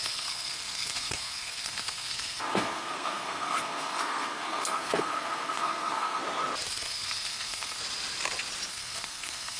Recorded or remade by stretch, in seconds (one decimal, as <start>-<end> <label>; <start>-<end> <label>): 0.0-6.2 remade; 6.2-6.7 recorded; 6.7-7.8 remade; 7.8-8.7 recorded; 8.7-9.6 remade